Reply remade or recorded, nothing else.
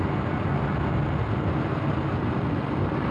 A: recorded